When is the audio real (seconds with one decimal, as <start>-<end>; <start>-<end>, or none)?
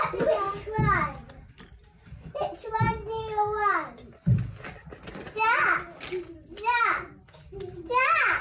0.0-8.4